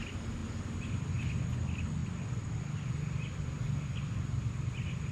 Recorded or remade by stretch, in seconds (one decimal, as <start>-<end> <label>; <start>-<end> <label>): 0.0-5.1 recorded